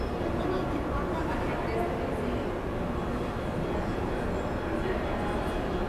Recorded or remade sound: recorded